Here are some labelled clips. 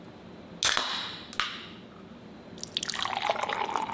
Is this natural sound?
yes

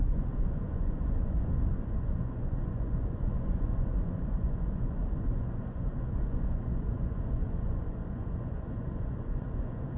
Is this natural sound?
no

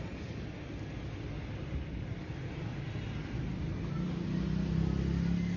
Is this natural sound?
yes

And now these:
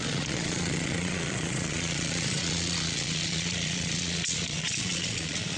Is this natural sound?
no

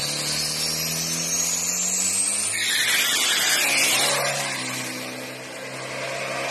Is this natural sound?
yes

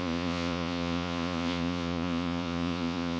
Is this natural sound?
no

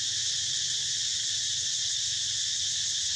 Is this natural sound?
yes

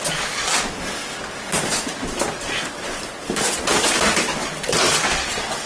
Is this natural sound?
yes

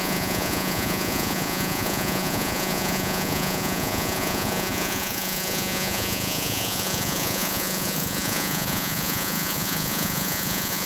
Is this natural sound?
no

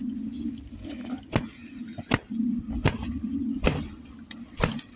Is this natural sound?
yes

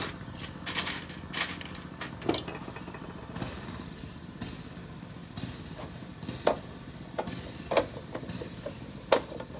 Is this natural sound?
yes